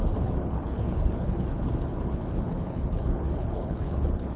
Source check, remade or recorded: remade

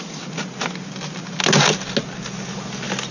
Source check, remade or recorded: recorded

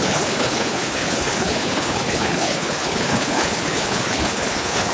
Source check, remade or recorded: remade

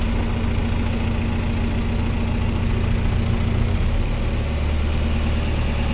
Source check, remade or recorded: recorded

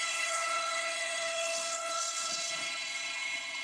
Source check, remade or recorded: remade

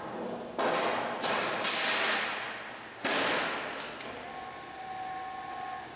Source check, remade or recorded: recorded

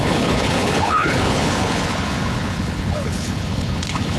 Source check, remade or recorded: remade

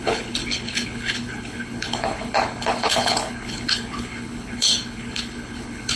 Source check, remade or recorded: remade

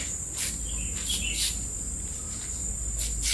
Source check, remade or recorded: recorded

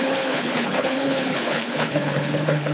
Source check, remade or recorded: remade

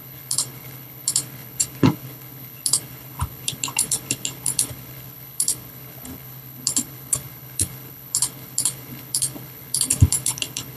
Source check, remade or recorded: remade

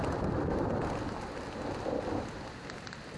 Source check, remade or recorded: recorded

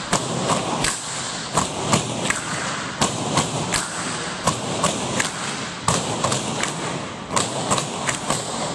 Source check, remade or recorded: recorded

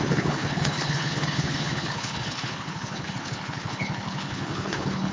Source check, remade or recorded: remade